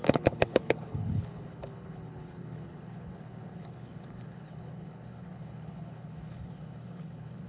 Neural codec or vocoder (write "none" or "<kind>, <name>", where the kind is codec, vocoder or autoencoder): codec, HILCodec